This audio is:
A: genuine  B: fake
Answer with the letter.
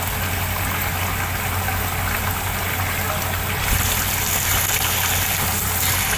A